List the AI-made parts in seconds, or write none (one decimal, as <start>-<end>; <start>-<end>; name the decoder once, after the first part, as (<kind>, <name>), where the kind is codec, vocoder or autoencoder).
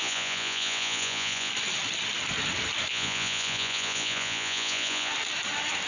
0.0-1.5 (vocoder, Vocos); 2.9-5.1